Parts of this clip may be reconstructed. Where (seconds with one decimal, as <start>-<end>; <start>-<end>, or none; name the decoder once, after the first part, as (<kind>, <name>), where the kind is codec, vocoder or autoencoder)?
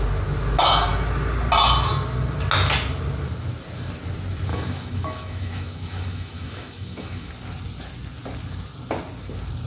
4.5-7.3 (autoencoder, DAC-VAE)